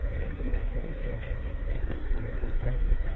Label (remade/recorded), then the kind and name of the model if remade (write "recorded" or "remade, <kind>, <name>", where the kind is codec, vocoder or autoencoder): remade, codec, SNAC